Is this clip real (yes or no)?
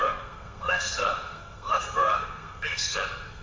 no